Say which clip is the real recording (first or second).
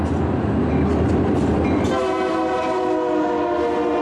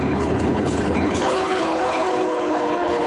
first